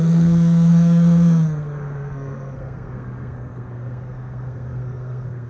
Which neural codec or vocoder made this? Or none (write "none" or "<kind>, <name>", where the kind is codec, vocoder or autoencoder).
codec, SNAC